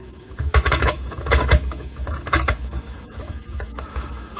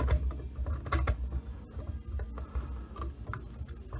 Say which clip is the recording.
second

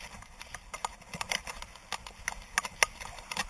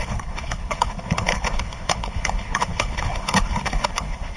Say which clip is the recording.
first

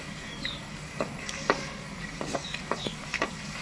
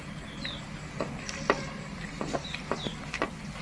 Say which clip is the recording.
second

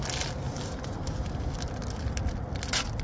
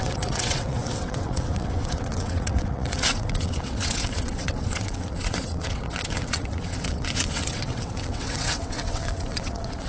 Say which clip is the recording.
first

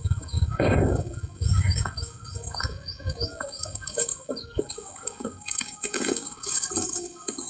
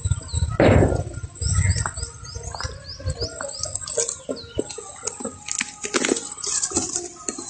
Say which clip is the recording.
second